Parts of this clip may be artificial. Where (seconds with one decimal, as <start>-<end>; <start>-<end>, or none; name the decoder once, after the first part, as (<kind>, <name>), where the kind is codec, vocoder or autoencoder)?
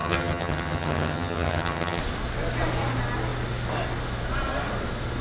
0.0-2.0 (vocoder, HiFi-GAN)